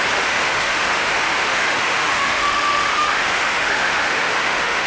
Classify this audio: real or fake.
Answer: fake